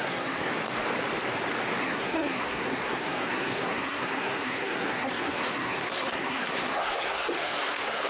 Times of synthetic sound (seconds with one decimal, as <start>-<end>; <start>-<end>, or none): 0.0-0.5; 1.8-8.1